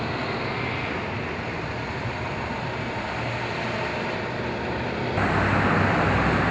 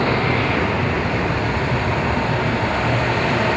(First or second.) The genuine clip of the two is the first